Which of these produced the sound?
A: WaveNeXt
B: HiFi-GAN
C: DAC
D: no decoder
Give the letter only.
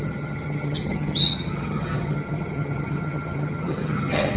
B